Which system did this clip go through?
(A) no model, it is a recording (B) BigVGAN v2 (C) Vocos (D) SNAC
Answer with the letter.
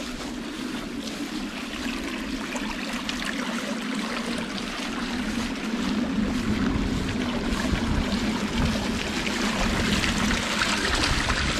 A